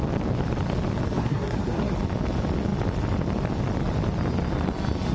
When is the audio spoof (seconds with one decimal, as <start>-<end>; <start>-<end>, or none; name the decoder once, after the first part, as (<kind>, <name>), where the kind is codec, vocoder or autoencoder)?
1.2-1.9 (codec, SNAC)